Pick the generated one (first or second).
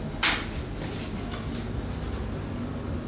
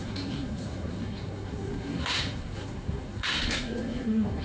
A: second